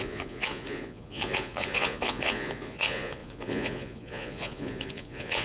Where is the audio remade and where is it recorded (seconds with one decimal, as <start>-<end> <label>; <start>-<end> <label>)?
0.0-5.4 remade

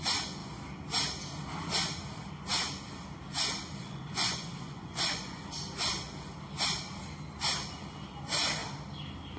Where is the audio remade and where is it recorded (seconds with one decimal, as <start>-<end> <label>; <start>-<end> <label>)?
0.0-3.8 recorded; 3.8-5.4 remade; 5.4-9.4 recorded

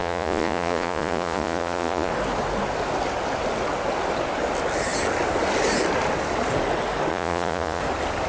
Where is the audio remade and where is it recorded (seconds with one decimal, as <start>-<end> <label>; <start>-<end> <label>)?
0.0-2.1 remade; 2.1-7.1 recorded; 7.1-7.8 remade; 7.8-8.3 recorded

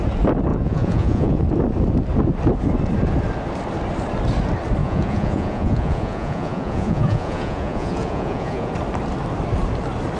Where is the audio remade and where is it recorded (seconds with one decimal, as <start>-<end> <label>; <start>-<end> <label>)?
0.0-0.5 recorded; 0.5-1.4 remade; 1.4-4.8 recorded; 4.8-8.7 remade; 8.7-10.2 recorded

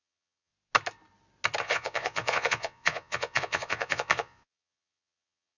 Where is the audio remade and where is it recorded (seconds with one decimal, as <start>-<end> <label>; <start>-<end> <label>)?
0.0-0.5 remade; 0.5-1.6 recorded; 1.6-5.6 remade